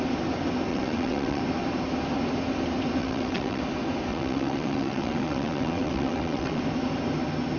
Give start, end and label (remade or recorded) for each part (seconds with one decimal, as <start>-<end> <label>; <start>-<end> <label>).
0.0-0.7 recorded; 0.7-1.4 remade; 1.4-3.0 recorded; 3.0-3.6 remade; 3.6-4.1 recorded; 4.1-6.6 remade; 6.6-7.6 recorded